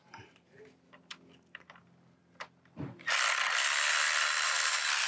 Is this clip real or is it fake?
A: real